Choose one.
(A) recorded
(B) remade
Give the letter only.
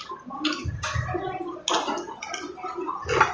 A